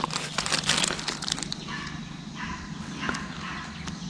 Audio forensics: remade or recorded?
recorded